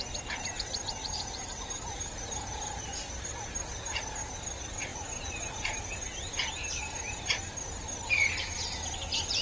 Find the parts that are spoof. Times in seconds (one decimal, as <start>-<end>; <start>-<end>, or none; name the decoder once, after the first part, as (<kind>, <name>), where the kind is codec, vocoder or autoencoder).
1.0-4.2 (vocoder, BigVGAN v2)